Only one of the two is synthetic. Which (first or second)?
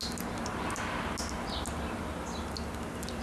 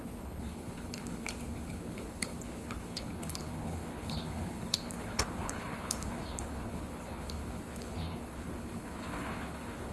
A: second